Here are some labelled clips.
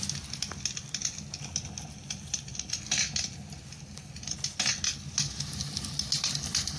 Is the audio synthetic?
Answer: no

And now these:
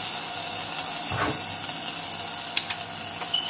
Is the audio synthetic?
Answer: no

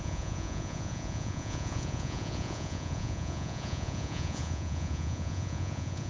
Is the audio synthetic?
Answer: yes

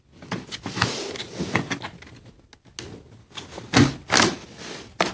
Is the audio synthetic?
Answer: no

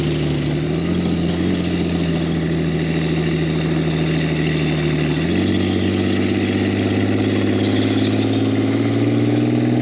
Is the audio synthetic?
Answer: no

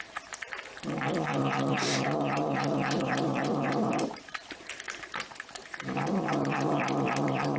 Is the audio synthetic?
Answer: yes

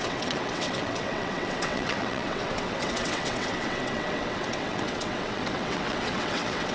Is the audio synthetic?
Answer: yes